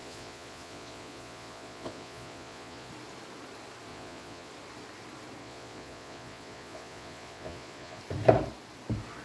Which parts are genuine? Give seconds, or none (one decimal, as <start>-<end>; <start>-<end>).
2.9-3.9; 4.5-5.4; 8.0-9.2